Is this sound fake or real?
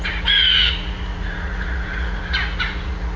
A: fake